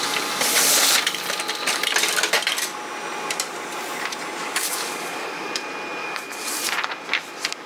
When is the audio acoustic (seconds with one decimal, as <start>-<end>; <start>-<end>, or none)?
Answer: 0.0-4.4; 5.5-6.0; 6.5-7.7